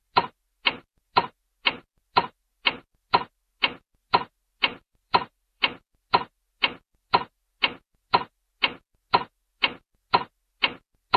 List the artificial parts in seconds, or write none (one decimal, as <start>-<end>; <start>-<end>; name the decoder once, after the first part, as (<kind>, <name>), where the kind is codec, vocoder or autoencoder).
4.7-5.6 (vocoder, BigVGAN v2)